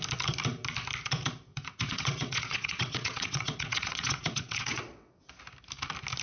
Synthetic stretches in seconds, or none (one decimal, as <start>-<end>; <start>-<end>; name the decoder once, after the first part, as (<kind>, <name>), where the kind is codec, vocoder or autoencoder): 1.5-5.2 (vocoder, WaveNeXt)